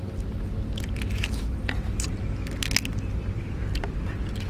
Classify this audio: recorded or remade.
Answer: recorded